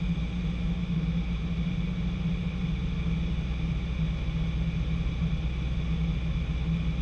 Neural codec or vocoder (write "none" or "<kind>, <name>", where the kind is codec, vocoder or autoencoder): none